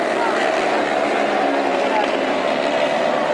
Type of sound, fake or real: real